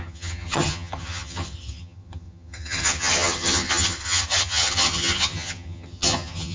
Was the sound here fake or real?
fake